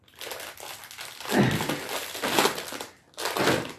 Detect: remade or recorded recorded